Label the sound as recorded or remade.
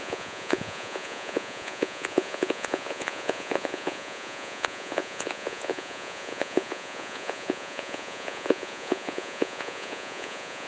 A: remade